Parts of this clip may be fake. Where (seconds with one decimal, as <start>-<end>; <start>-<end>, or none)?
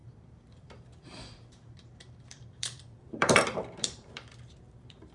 0.0-5.1